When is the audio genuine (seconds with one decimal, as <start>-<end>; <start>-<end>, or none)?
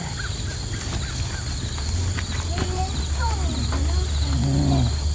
0.0-5.1